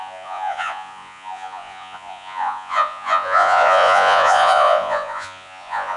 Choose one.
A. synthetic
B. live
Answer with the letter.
A